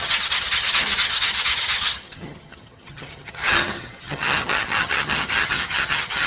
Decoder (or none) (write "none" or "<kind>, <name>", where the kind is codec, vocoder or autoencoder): vocoder, HiFi-GAN